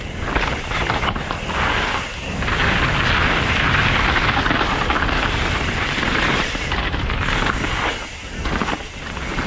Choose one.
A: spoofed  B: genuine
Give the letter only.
B